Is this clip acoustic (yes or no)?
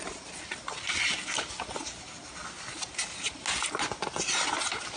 yes